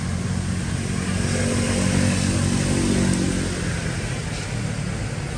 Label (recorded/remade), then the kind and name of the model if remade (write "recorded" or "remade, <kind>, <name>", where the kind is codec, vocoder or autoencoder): recorded